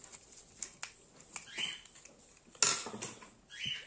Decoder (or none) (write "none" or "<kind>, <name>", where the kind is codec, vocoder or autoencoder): none